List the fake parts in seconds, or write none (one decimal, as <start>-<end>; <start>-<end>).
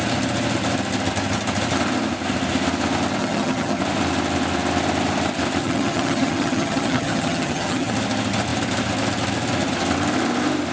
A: 3.2-3.8; 5.6-7.9